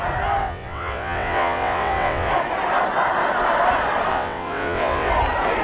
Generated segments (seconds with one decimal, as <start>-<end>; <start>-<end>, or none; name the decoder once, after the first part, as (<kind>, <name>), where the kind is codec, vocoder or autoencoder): 0.4-2.3 (vocoder, WaveNeXt); 4.1-5.1